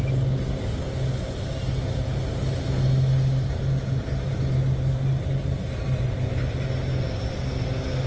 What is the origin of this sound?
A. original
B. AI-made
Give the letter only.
A